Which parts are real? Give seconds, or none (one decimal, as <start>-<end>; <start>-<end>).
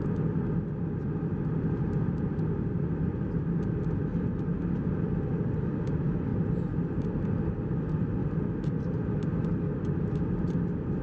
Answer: 0.0-6.3; 7.1-11.0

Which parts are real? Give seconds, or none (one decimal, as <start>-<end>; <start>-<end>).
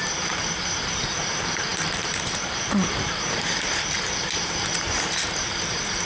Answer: none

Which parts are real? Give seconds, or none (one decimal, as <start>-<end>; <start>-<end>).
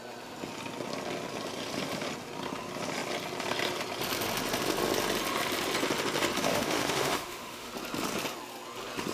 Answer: 0.0-6.5; 7.7-9.1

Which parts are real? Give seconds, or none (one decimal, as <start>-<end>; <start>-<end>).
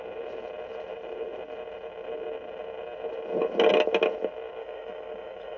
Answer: 0.0-4.6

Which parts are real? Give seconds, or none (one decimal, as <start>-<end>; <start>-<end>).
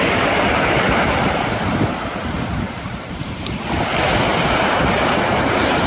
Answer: 0.0-2.9; 3.5-4.3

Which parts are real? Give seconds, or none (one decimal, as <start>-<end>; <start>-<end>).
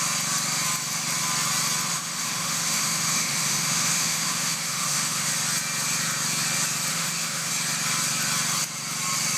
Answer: 0.0-1.9; 5.3-6.9; 7.5-9.4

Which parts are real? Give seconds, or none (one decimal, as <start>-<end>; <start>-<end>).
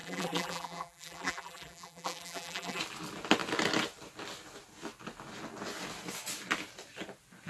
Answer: 2.8-7.5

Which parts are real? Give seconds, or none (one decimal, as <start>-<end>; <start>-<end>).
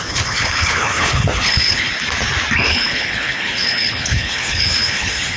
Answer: 1.9-2.7